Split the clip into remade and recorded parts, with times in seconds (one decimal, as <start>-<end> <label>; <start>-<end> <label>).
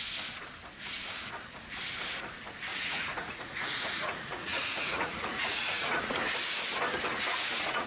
0.0-2.7 recorded; 2.7-6.2 remade; 6.2-7.1 recorded; 7.1-7.9 remade